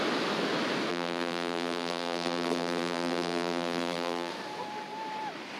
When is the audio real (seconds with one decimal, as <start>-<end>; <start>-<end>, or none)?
0.0-0.9; 4.3-5.6